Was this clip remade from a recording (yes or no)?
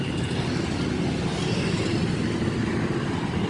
no